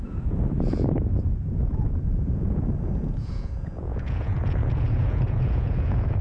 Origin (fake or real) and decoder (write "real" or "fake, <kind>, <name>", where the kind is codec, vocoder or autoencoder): fake, vocoder, Vocos